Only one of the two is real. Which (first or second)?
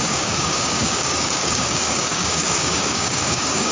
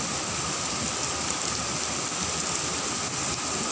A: second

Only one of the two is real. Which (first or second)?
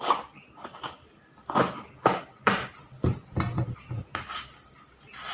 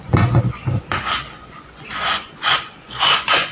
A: first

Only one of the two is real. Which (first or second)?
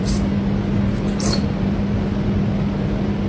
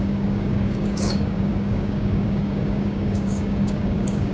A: first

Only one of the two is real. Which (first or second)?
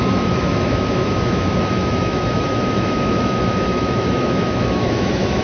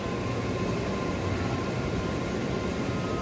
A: second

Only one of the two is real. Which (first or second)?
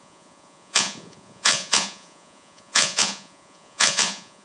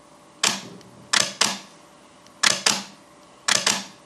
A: second